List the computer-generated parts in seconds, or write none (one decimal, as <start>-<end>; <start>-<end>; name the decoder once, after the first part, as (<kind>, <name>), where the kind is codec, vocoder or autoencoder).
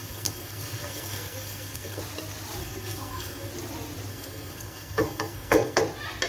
0.0-2.0 (codec, SNAC); 2.6-3.5; 4.1-5.8